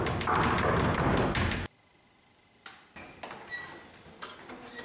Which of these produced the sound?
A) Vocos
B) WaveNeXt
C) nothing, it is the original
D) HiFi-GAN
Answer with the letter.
C